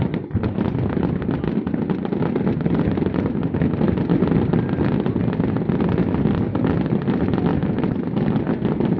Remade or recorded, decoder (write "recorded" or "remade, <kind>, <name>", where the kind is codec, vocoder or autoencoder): recorded